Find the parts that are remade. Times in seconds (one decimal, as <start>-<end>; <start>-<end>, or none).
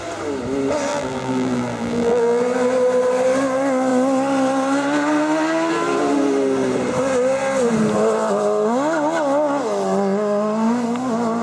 0.9-2.4